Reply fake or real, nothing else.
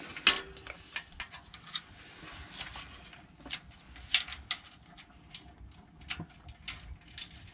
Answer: real